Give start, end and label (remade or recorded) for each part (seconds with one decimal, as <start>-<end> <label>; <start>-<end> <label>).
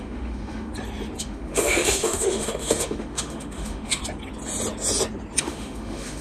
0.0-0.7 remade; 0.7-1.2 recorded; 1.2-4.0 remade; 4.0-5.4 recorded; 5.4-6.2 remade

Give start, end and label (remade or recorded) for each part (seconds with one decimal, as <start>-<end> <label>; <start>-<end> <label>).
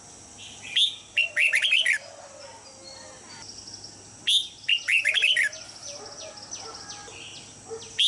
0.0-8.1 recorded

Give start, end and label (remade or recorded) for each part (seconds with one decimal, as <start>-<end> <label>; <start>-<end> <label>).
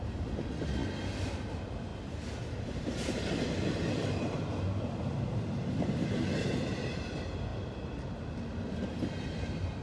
0.0-0.8 remade; 0.8-1.5 recorded; 1.5-1.9 remade; 1.9-5.7 recorded; 5.7-7.5 remade; 7.5-9.0 recorded; 9.0-9.8 remade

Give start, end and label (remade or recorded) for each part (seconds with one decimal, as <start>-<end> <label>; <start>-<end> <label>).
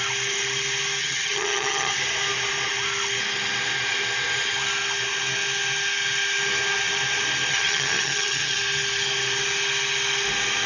0.0-1.0 recorded; 1.0-1.9 remade; 1.9-7.5 recorded; 7.5-8.6 remade; 8.6-10.7 recorded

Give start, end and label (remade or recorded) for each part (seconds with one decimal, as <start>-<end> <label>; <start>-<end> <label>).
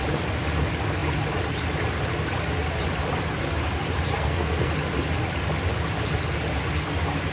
0.0-4.1 recorded; 4.1-4.7 remade; 4.7-7.3 recorded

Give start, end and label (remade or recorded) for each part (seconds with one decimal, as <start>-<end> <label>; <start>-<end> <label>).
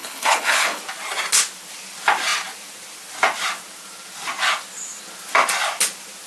0.0-0.8 remade; 0.8-6.3 recorded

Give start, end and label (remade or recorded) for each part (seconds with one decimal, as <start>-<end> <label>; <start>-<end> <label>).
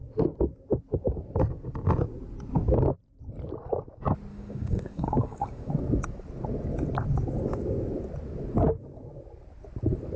0.0-4.3 recorded; 4.3-5.7 remade; 5.7-10.2 recorded